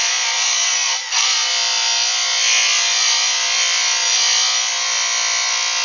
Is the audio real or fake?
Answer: real